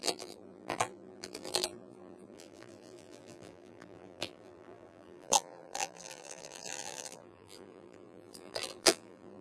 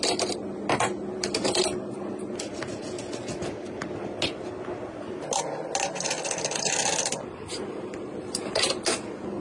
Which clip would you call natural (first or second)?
second